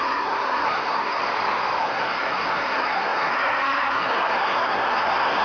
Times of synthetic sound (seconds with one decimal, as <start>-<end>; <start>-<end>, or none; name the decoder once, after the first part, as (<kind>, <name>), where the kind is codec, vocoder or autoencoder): 0.0-1.2 (codec, SNAC); 1.8-5.4